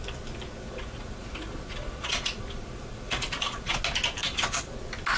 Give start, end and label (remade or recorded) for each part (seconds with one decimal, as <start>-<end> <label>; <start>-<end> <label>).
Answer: 0.0-0.7 recorded; 0.7-3.8 remade; 3.8-4.2 recorded; 4.2-4.8 remade; 4.8-5.2 recorded